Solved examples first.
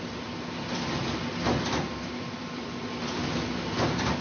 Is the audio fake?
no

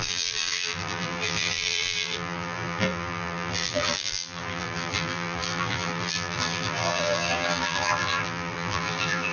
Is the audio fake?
yes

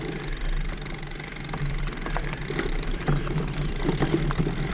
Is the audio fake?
yes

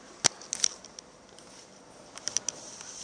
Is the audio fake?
no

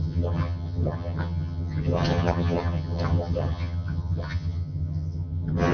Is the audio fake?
yes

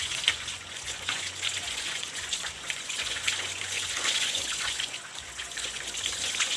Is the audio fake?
yes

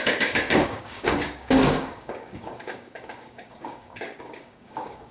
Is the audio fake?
yes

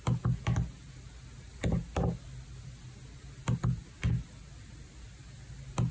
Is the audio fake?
no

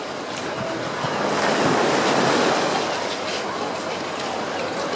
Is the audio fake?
no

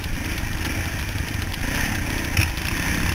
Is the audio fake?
no